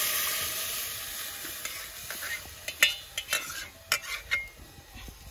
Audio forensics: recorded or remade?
recorded